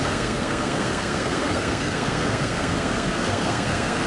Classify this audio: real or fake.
fake